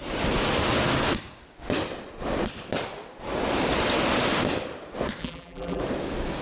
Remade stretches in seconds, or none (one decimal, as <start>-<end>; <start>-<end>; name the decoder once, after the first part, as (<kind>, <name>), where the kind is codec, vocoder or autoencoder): 5.2-5.8 (vocoder, BigVGAN v2)